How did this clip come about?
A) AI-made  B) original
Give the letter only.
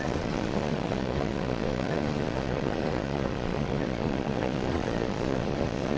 A